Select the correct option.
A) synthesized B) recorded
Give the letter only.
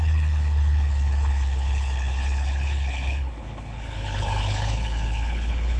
A